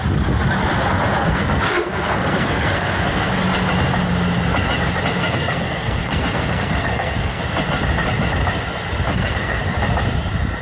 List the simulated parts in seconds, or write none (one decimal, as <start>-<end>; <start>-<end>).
1.2-3.3; 5.2-7.4; 9.1-9.6